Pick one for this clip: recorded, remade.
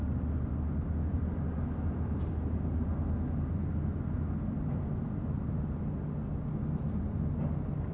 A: recorded